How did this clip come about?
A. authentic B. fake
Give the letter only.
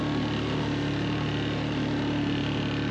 A